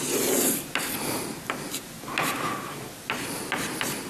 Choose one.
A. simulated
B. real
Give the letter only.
B